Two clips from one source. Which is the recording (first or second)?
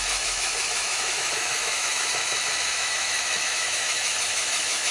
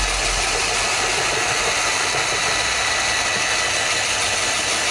second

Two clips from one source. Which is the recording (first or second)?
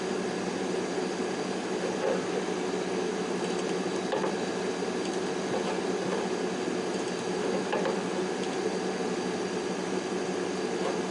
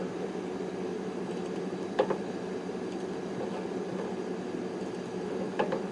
first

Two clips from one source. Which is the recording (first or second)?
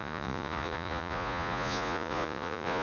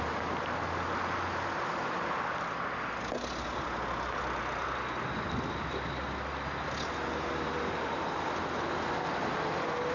second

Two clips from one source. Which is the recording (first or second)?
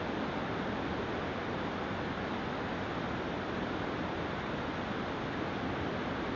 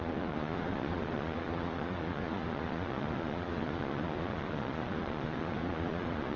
first